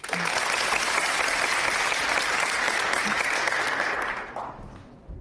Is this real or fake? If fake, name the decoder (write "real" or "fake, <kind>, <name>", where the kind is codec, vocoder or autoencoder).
real